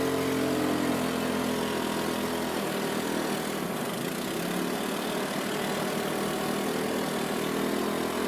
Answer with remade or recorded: recorded